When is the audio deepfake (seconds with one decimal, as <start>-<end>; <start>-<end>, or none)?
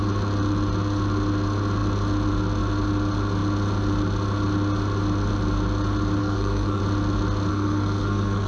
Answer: 6.2-6.8; 7.5-8.5